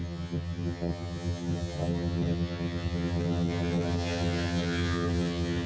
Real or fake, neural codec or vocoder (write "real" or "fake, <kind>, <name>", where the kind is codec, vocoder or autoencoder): fake, vocoder, HiFi-GAN